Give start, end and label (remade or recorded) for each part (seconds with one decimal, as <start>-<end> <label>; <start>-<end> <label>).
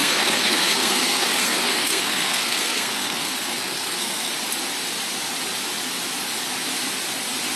0.0-4.3 remade; 4.3-7.6 recorded